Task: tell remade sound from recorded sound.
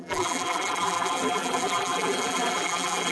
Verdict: remade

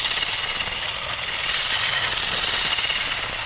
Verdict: recorded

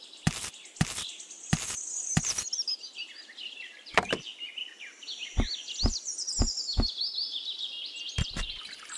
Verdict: recorded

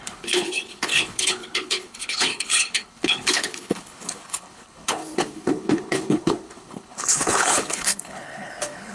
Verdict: remade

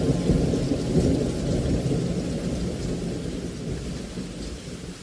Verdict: recorded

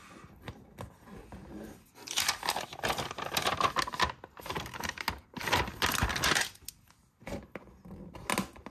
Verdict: recorded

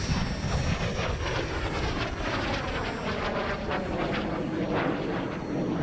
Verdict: recorded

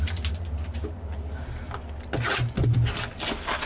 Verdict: recorded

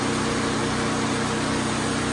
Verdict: recorded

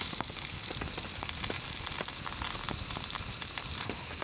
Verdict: recorded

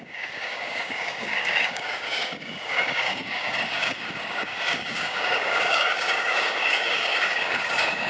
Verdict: remade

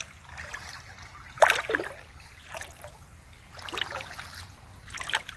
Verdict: recorded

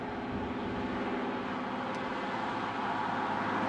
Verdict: recorded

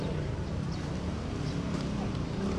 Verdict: recorded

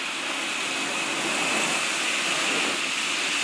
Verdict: recorded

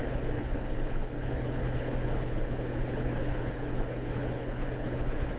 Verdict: remade